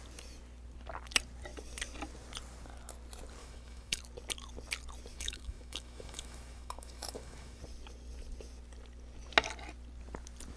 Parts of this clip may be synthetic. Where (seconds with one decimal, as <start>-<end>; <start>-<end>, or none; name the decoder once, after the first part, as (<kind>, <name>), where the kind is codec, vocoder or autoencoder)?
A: 3.4-4.0 (autoencoder, DAC-VAE); 5.1-7.6